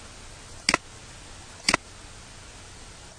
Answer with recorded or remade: recorded